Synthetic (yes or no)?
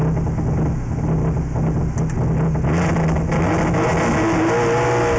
no